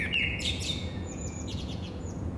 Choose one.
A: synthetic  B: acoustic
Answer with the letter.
A